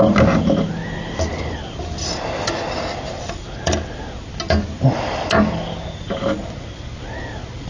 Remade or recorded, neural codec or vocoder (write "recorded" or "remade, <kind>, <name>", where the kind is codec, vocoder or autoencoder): recorded